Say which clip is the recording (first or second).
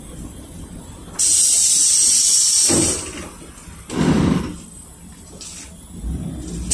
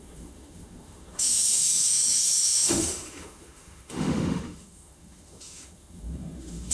first